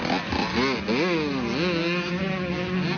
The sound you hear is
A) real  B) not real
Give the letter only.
A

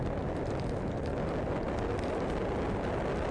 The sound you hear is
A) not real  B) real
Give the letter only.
B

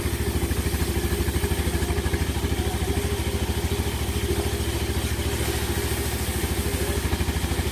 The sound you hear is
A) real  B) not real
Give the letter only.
A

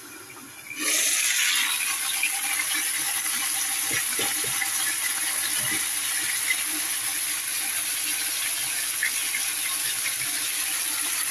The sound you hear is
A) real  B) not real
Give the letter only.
A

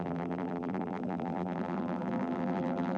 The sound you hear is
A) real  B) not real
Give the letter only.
B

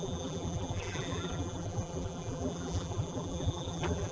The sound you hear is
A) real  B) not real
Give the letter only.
B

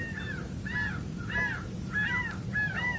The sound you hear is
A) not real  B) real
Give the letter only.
A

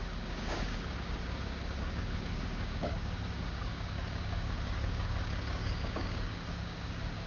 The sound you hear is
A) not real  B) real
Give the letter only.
A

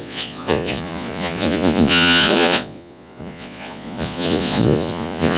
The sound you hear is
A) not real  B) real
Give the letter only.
A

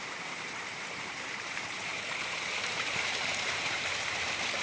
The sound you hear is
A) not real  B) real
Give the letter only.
A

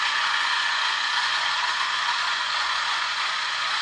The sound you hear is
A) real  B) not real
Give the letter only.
B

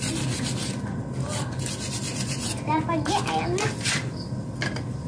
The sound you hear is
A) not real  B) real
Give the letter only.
B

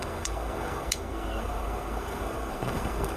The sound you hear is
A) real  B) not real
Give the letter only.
B